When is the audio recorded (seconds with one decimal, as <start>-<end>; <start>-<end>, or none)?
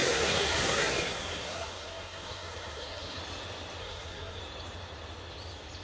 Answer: 3.2-3.8; 4.4-5.8